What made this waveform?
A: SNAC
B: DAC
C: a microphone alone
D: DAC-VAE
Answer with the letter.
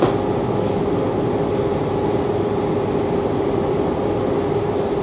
C